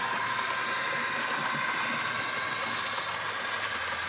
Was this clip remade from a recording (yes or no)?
no